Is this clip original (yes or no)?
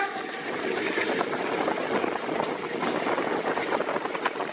yes